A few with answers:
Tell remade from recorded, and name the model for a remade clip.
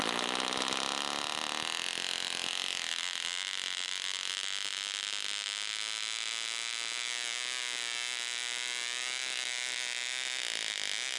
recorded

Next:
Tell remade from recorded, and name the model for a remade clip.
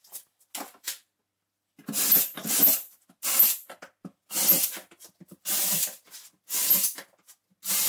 recorded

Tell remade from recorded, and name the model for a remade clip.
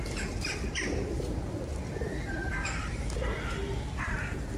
recorded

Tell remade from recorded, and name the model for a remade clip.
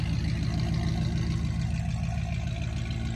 recorded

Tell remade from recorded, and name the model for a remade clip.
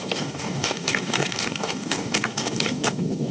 remade, codec, DAC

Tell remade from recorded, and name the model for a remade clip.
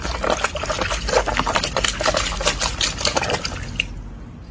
recorded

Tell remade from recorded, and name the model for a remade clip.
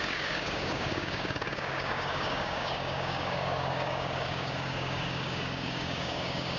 remade, codec, DAC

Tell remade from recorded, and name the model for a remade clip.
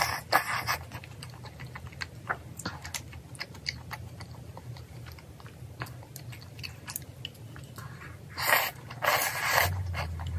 recorded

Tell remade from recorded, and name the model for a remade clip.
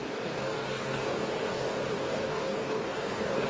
remade, codec, DAC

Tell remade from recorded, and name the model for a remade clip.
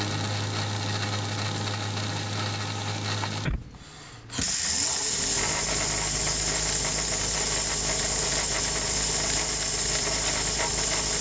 recorded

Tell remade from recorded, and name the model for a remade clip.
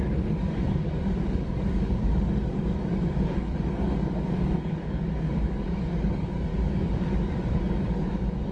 remade, codec, DAC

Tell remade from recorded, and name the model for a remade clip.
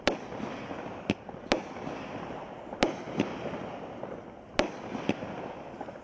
recorded